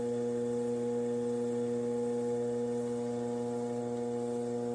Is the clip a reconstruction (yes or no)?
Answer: no